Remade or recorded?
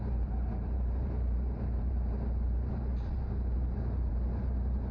remade